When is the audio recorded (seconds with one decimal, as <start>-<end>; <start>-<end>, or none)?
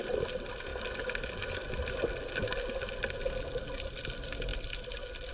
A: 0.0-5.3